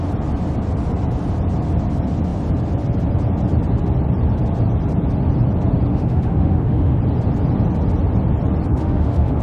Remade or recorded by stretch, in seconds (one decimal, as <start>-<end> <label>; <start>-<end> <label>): 0.0-5.9 recorded; 5.9-7.0 remade; 7.0-8.7 recorded; 8.7-9.4 remade